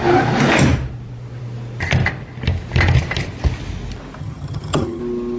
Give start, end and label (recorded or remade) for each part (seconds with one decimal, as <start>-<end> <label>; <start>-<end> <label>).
0.0-4.2 recorded; 4.2-5.0 remade; 5.0-5.4 recorded